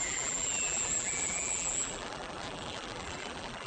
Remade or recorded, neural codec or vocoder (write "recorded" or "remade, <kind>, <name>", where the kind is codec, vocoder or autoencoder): remade, vocoder, BigVGAN v2